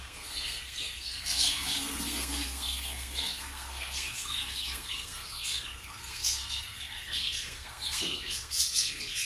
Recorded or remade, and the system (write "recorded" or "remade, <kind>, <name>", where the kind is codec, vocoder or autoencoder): remade, codec, SNAC